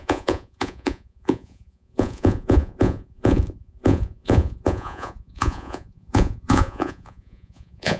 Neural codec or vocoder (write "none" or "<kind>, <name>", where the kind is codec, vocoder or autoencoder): vocoder, Vocos